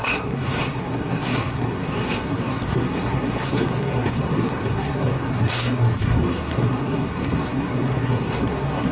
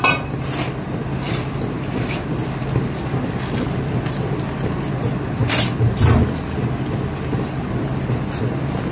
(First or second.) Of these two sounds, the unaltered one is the second